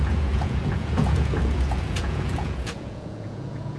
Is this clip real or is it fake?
fake